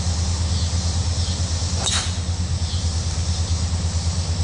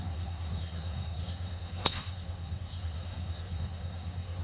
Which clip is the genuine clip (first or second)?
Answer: first